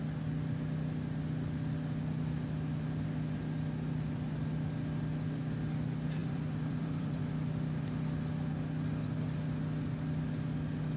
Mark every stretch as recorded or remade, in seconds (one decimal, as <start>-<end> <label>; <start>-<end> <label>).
0.0-6.2 recorded; 6.2-7.2 remade; 7.2-11.0 recorded